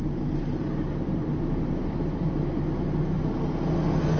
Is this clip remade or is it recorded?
recorded